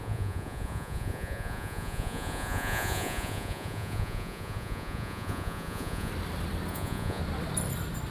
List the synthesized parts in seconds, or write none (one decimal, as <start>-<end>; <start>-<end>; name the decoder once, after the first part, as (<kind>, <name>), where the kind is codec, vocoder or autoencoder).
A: 0.0-6.1 (vocoder, Vocos); 6.7-7.2

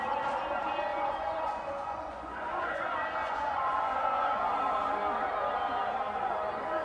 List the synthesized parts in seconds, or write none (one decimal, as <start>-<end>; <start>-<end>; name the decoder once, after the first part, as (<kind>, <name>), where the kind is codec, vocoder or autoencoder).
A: 0.9-4.9 (vocoder, Vocos)

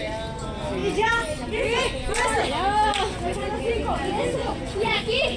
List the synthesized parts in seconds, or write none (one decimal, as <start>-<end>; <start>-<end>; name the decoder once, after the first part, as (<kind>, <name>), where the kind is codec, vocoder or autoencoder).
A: 4.4-5.4 (vocoder, Vocos)

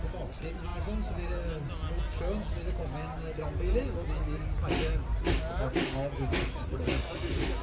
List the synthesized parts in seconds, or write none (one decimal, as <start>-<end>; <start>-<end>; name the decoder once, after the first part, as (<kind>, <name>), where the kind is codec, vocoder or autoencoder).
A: 6.6-7.1 (vocoder, Vocos)